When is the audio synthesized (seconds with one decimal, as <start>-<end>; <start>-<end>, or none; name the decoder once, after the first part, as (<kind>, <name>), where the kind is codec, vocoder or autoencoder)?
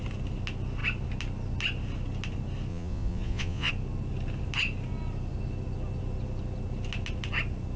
2.7-3.7 (vocoder, Vocos)